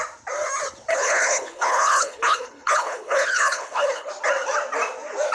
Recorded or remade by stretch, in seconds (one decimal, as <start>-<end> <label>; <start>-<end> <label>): 0.0-0.9 recorded; 0.9-4.1 remade; 4.1-5.3 recorded